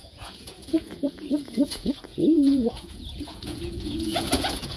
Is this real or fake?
fake